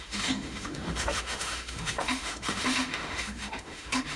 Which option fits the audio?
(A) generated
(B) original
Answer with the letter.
A